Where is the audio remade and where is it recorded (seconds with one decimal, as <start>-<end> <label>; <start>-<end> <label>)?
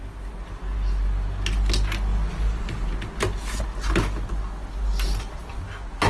0.0-6.1 recorded